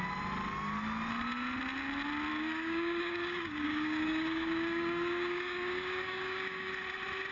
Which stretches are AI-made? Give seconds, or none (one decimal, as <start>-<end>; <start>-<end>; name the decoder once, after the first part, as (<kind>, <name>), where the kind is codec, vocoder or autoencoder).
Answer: 2.3-6.7 (codec, DAC)